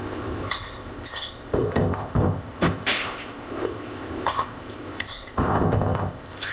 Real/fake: fake